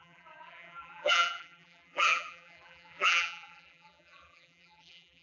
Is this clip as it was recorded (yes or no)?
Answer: no